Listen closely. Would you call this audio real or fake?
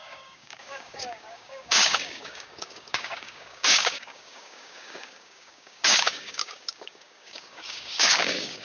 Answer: fake